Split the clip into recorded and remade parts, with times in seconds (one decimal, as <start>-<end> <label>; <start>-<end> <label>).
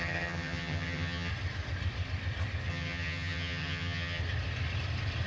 0.0-1.3 remade; 1.3-2.7 recorded; 2.7-4.2 remade; 4.2-5.3 recorded